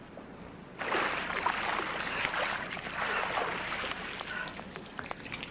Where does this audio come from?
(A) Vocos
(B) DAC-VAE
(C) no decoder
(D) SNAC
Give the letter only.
C